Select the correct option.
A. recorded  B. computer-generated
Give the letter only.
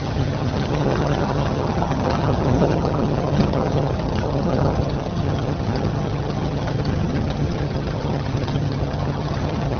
B